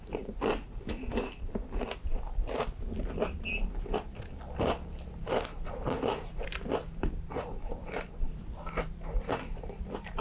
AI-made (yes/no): no